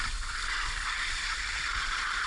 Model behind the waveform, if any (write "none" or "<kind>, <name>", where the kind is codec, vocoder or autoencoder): none